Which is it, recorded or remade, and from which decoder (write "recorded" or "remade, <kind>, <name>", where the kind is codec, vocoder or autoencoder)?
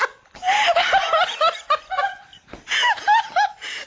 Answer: recorded